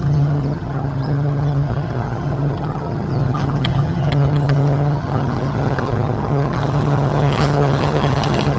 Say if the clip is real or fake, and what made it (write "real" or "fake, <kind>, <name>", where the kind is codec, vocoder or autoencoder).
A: fake, vocoder, HiFi-GAN